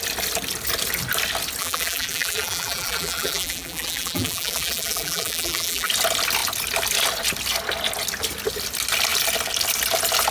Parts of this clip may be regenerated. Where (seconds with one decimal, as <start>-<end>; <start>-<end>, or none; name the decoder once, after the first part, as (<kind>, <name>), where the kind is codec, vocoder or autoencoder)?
1.6-5.9 (vocoder, BigVGAN v2)